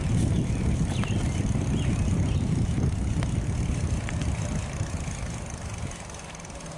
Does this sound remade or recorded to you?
recorded